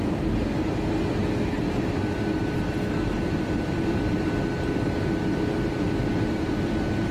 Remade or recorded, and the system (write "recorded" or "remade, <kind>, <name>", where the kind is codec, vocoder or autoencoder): recorded